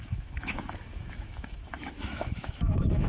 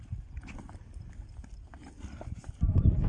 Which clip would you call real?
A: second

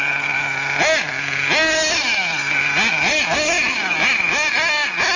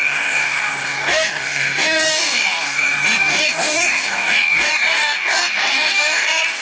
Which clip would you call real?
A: first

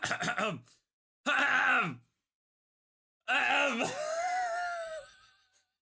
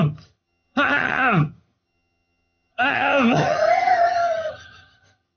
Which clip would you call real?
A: first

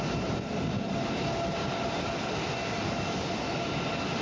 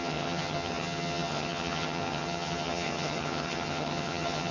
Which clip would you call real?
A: first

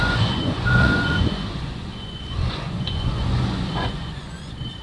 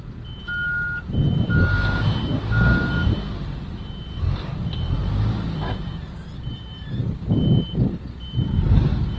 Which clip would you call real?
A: second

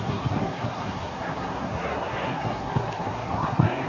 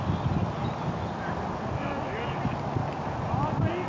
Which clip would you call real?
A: second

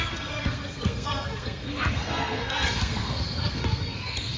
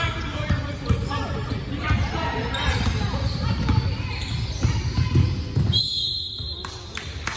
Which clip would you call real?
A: second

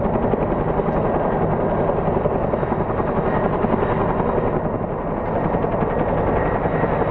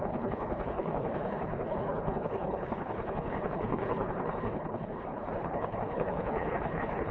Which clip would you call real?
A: first